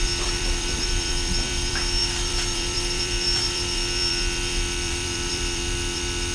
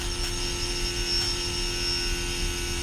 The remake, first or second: first